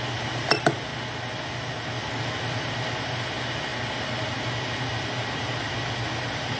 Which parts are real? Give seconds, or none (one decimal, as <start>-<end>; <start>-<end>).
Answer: 0.0-6.6